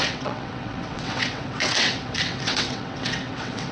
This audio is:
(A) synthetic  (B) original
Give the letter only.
A